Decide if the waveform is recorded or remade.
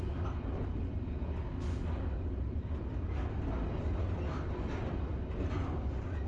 recorded